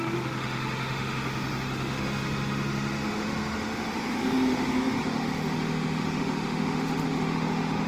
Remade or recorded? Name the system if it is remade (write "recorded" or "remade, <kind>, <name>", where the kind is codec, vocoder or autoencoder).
remade, autoencoder, DAC-VAE